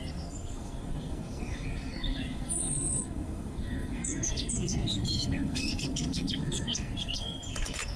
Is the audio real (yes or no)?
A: no